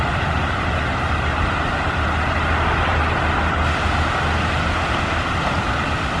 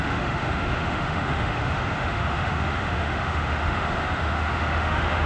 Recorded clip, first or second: first